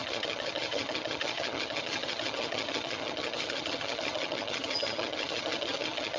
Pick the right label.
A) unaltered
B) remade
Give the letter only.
B